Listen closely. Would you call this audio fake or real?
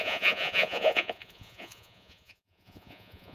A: fake